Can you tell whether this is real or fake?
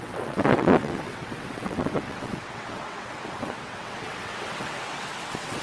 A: fake